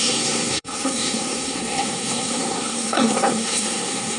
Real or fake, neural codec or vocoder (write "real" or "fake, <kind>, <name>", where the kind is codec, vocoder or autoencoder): fake, codec, SNAC